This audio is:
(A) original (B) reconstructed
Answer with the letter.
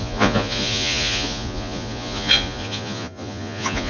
B